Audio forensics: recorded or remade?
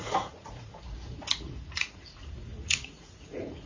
remade